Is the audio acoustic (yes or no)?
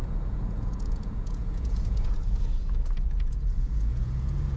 no